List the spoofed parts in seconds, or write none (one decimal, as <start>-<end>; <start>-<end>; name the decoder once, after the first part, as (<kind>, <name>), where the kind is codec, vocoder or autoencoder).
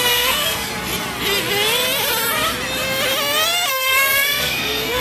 0.0-0.7 (codec, SNAC); 3.7-5.0